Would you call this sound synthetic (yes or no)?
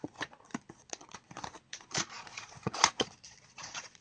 yes